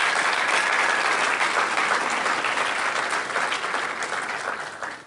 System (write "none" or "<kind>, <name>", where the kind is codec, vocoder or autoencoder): none